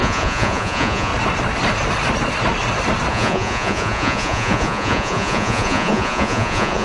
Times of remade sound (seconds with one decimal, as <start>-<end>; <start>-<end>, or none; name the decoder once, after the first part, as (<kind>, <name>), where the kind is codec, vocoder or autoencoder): 0.0-1.1 (vocoder, Vocos); 3.1-6.8